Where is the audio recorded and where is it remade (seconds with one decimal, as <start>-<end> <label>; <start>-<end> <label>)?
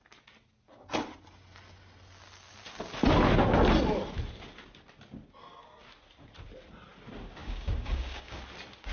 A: 0.0-7.4 recorded; 7.4-8.4 remade; 8.4-8.9 recorded